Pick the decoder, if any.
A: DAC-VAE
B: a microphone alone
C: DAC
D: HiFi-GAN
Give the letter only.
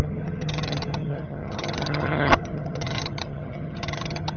D